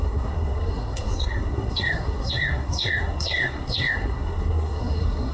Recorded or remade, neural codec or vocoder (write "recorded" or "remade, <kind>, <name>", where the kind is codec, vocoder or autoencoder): remade, codec, SNAC